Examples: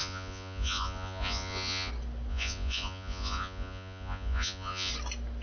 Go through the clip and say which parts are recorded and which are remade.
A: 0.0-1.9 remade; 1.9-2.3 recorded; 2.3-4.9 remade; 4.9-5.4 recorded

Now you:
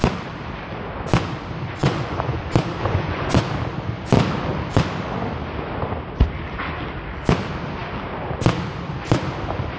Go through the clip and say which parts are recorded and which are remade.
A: 0.0-1.8 recorded; 1.8-2.4 remade; 2.4-2.8 recorded; 2.8-3.4 remade; 3.4-9.8 recorded

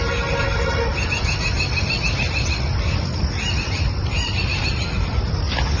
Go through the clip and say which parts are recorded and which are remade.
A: 0.0-5.8 recorded

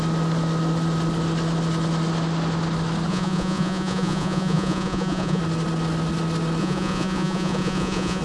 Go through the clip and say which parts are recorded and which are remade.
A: 0.0-3.1 recorded; 3.1-5.4 remade; 5.4-6.6 recorded; 6.6-8.2 remade

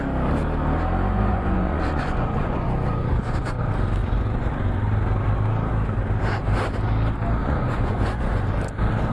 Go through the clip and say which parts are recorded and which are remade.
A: 0.0-1.1 recorded; 1.1-3.6 remade; 3.6-4.0 recorded; 4.0-4.5 remade; 4.5-7.4 recorded; 7.4-8.5 remade; 8.5-9.1 recorded

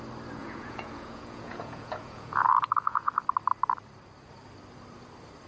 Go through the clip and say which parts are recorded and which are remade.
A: 0.0-0.4 recorded; 0.4-3.1 remade; 3.1-5.5 recorded

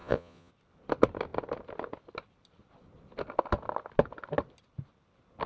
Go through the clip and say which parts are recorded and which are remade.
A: 0.0-0.5 remade; 0.5-5.5 recorded

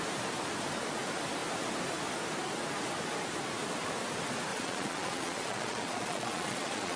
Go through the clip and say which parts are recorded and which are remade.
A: 0.0-4.5 recorded; 4.5-7.0 remade